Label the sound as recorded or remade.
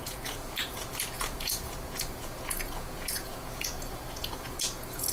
remade